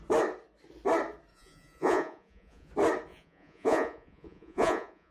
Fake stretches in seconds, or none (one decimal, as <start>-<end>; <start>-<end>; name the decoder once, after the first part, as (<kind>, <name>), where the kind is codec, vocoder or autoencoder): 1.3-2.7 (vocoder, Vocos); 3.1-5.1